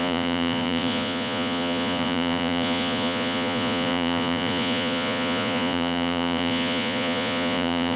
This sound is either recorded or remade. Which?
remade